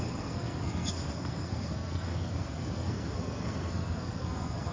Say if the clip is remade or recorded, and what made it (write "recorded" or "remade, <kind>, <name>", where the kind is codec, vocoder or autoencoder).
remade, codec, SNAC